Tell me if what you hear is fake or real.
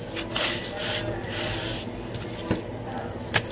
real